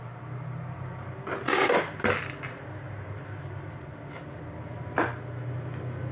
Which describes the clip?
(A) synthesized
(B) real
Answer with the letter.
B